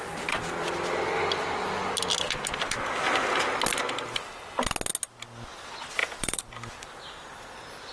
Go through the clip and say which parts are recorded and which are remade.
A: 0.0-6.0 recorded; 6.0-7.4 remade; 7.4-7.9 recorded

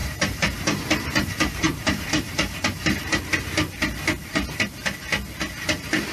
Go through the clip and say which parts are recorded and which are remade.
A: 0.0-3.2 remade; 3.2-4.2 recorded; 4.2-4.9 remade; 4.9-6.1 recorded

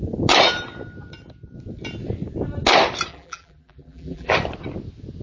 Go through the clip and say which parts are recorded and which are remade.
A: 0.0-3.1 recorded; 3.1-4.3 remade; 4.3-5.2 recorded

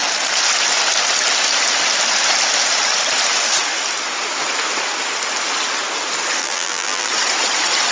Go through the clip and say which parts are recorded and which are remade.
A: 0.0-6.4 recorded; 6.4-7.1 remade; 7.1-7.9 recorded